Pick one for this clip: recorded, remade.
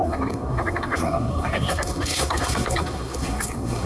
remade